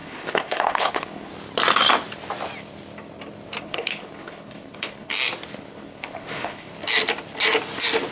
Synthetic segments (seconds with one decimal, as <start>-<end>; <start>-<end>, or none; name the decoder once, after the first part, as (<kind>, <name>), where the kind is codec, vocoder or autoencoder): 0.0-1.3 (codec, HILCodec); 3.6-5.1; 5.7-6.7